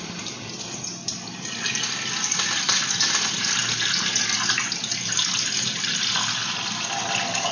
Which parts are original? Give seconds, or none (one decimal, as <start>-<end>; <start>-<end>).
0.0-7.5